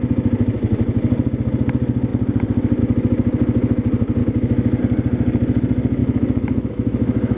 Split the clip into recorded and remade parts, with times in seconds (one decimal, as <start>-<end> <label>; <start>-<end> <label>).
0.0-4.2 recorded; 4.2-4.8 remade; 4.8-6.0 recorded; 6.0-7.4 remade